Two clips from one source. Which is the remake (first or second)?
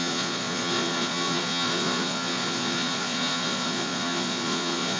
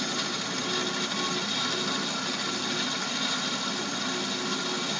first